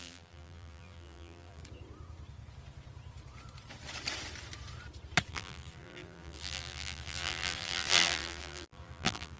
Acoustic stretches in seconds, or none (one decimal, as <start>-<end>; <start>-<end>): 1.6-5.3